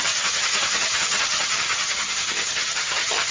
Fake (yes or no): yes